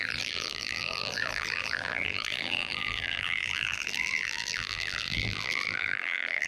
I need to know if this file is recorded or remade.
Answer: remade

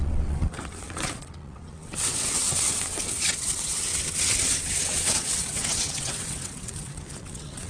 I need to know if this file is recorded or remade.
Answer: remade